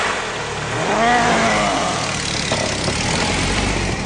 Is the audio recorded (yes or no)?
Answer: yes